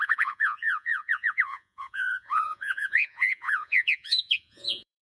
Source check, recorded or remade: remade